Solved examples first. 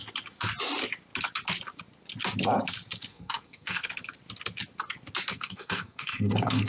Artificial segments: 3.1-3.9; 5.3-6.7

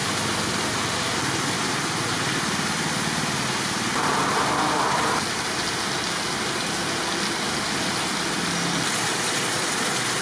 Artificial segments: none

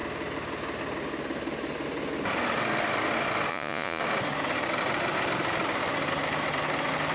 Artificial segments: 3.5-4.0

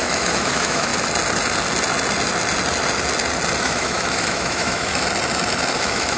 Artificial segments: 0.0-0.9; 3.6-4.9; 5.8-6.2